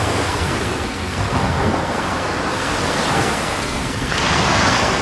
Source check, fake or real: fake